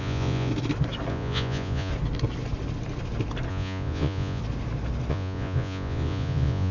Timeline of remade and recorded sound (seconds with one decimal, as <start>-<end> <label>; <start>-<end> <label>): 0.0-0.5 remade; 0.5-1.1 recorded; 1.1-1.9 remade; 1.9-3.5 recorded; 3.5-4.4 remade; 4.4-5.1 recorded; 5.1-6.7 remade